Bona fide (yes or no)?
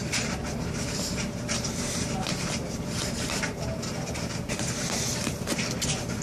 no